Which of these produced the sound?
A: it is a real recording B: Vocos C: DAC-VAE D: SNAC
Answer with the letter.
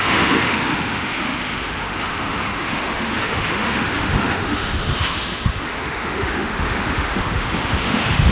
C